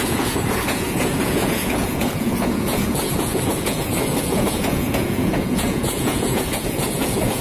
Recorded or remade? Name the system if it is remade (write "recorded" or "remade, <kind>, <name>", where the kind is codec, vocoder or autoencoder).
remade, vocoder, Vocos